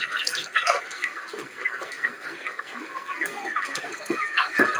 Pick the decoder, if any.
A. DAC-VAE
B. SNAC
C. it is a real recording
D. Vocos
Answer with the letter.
B